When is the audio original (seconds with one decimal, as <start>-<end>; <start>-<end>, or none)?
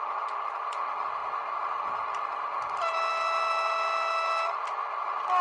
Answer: 0.0-5.4